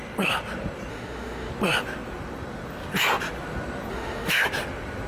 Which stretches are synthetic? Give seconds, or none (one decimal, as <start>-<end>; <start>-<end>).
0.9-1.5; 3.9-4.4